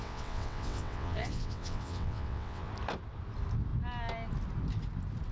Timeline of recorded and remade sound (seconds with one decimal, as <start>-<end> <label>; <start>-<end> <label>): 0.0-2.7 remade; 2.7-5.3 recorded